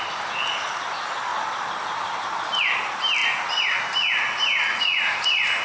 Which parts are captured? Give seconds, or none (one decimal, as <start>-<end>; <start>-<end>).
0.0-5.6